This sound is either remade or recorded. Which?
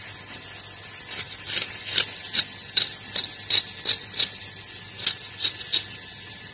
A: recorded